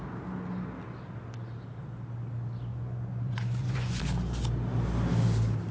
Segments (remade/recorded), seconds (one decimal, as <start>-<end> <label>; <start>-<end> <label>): 0.0-2.7 recorded; 2.7-4.0 remade; 4.0-5.7 recorded